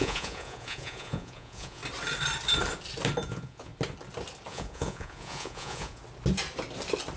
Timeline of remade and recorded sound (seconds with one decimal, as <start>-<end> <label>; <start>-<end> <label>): 0.0-1.8 remade; 1.8-3.3 recorded; 3.3-3.7 remade; 3.7-4.5 recorded; 4.5-6.0 remade; 6.0-7.2 recorded